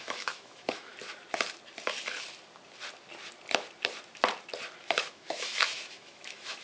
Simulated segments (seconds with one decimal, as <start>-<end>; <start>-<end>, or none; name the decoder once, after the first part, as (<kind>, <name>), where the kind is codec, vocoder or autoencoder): 0.0-0.9 (autoencoder, DAC-VAE); 4.8-6.6

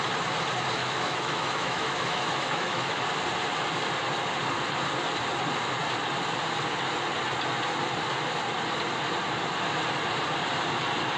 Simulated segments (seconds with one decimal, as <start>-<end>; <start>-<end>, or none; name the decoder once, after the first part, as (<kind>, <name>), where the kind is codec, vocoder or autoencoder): 0.8-3.0 (autoencoder, DAC-VAE)

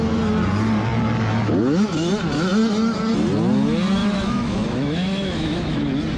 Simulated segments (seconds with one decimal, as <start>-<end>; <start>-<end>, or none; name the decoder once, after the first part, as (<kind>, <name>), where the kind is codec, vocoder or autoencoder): 4.0-5.8 (autoencoder, DAC-VAE)

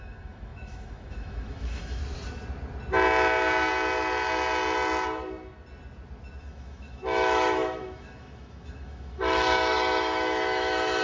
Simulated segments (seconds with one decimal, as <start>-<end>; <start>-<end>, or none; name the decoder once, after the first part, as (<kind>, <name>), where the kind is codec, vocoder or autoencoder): 0.0-2.0 (autoencoder, DAC-VAE); 6.4-11.0

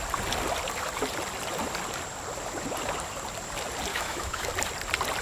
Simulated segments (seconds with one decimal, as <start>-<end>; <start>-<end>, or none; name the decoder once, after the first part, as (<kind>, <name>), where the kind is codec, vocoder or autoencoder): 3.9-4.5 (autoencoder, DAC-VAE)